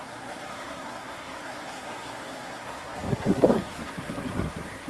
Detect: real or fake fake